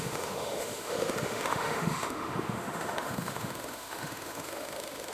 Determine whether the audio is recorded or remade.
remade